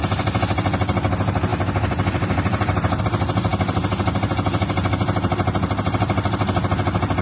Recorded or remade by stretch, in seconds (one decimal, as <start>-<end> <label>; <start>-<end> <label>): 0.0-1.5 recorded; 1.5-3.0 remade; 3.0-7.2 recorded